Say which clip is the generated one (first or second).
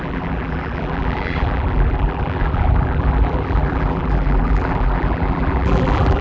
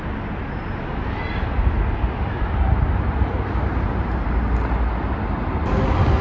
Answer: first